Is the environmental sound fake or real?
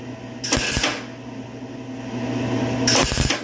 real